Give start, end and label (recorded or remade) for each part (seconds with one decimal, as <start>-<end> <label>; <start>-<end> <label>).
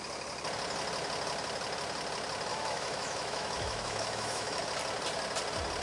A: 0.0-2.5 recorded; 2.5-4.6 remade; 4.6-5.8 recorded